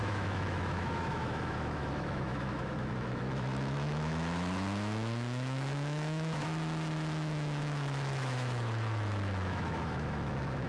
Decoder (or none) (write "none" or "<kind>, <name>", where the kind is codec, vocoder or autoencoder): autoencoder, DAC-VAE